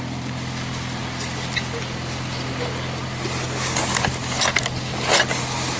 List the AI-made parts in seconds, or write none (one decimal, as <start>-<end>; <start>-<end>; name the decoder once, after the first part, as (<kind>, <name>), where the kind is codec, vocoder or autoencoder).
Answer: none